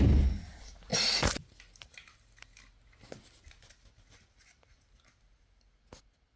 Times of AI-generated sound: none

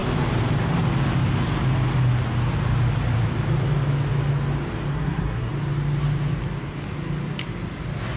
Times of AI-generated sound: 4.9-5.5 (codec, SNAC)

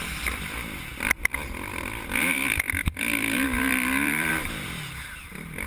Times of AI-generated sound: 0.0-5.7 (vocoder, BigVGAN v2)